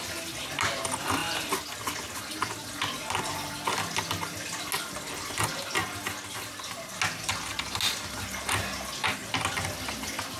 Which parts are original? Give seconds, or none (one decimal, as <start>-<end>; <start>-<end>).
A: 0.0-10.4

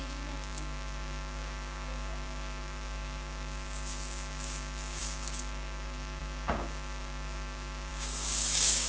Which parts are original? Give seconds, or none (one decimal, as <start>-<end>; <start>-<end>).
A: none

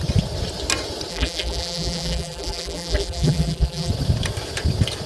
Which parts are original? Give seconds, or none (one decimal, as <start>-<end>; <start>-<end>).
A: 0.0-1.1; 3.9-5.1

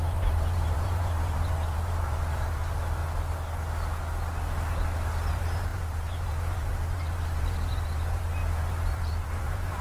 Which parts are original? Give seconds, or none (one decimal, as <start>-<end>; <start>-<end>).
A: 3.0-5.3